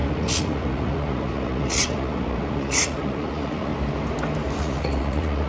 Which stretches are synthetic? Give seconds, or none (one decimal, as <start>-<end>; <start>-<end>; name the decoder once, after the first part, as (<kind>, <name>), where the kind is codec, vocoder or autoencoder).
0.0-3.7 (vocoder, Vocos); 4.6-5.5